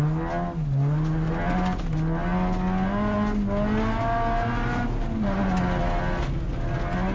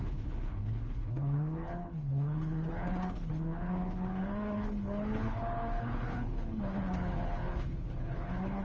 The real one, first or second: first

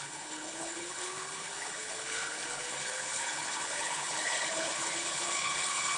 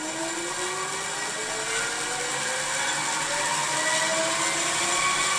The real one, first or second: second